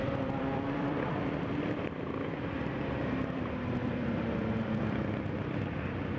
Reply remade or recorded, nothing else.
remade